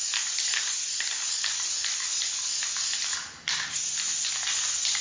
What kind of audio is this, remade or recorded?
recorded